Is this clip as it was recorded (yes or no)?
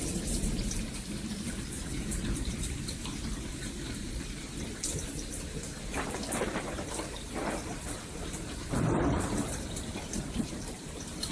no